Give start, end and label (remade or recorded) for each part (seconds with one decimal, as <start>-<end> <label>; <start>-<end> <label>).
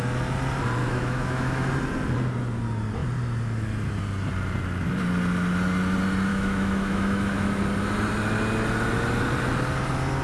0.0-0.8 recorded; 0.8-1.7 remade; 1.7-6.3 recorded; 6.3-7.6 remade; 7.6-10.2 recorded